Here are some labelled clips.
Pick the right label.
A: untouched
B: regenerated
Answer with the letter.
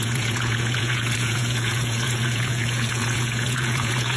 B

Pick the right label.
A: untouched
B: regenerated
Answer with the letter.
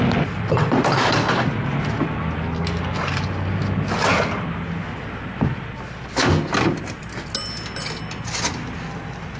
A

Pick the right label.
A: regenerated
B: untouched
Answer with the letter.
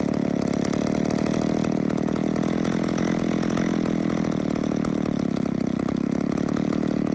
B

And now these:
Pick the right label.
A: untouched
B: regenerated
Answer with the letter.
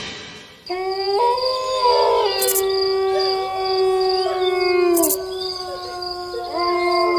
A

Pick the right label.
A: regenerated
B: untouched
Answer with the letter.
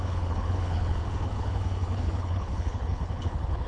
A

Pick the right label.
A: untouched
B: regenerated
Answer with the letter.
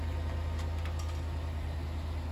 A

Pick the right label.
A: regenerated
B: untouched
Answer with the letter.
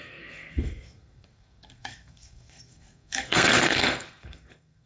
A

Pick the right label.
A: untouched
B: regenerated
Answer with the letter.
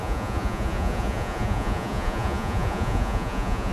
B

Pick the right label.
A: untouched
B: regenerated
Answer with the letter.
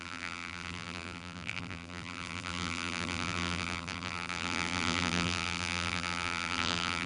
B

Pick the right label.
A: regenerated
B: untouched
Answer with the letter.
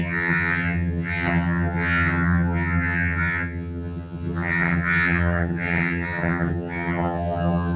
A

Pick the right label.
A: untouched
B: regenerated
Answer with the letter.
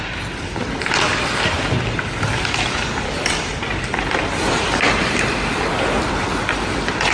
B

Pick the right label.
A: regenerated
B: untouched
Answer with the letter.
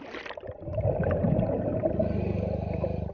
B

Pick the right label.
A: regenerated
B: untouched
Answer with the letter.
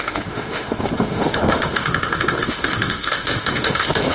A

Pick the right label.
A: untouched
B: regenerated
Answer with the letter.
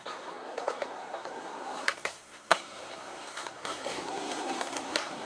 B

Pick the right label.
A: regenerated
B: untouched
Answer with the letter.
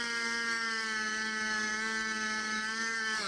A